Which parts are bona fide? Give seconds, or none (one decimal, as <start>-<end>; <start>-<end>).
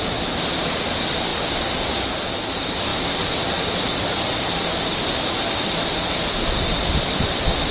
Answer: 0.0-7.7